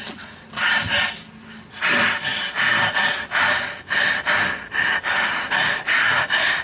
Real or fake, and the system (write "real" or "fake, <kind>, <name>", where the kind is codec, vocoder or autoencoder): real